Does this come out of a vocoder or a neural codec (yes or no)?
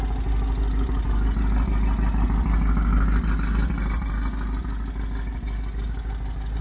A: no